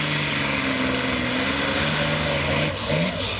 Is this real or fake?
real